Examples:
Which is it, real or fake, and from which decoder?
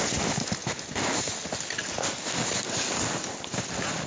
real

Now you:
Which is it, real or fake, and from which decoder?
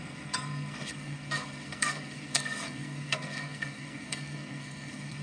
fake, codec, SNAC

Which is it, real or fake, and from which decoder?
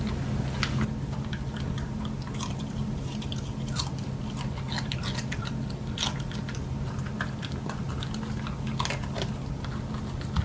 real